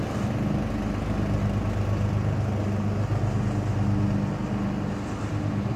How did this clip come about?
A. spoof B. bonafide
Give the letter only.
B